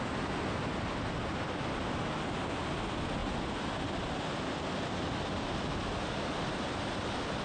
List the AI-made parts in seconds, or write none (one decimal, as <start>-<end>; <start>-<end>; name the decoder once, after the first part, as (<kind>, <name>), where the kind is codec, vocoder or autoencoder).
none